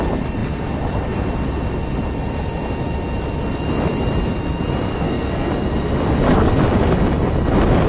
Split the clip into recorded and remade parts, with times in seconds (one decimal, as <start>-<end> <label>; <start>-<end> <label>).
0.0-4.9 recorded; 4.9-5.5 remade; 5.5-7.9 recorded

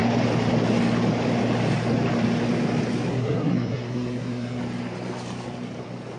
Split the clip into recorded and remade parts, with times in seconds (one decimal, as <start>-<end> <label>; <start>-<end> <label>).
0.0-3.1 recorded; 3.1-4.6 remade; 4.6-6.2 recorded

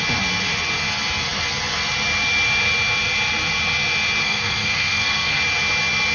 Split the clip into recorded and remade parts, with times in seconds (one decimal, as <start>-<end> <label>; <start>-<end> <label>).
0.0-4.2 recorded; 4.2-5.4 remade; 5.4-6.1 recorded

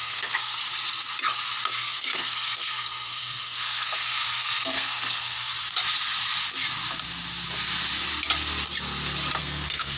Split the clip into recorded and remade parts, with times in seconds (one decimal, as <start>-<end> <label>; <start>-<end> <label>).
0.0-0.6 remade; 0.6-1.7 recorded; 1.7-5.5 remade; 5.5-9.4 recorded; 9.4-10.0 remade

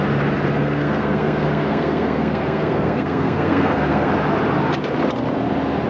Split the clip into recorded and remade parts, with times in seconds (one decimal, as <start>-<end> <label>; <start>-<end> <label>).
0.0-0.6 recorded; 0.6-4.1 remade; 4.1-5.9 recorded